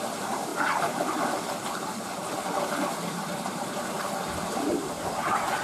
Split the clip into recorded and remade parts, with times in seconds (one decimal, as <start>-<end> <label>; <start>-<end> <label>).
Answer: 0.0-5.6 remade